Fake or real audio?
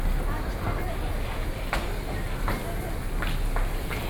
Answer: real